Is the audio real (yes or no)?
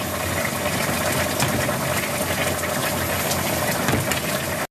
yes